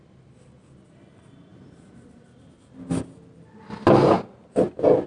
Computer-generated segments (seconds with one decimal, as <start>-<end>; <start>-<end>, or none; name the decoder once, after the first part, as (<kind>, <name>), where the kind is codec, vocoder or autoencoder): none